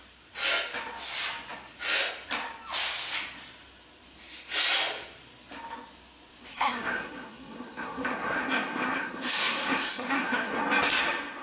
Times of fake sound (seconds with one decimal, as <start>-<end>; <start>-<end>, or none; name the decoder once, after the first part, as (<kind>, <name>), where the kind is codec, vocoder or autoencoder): 6.5-10.6 (codec, SNAC)